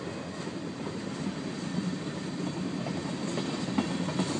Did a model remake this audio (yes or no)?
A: no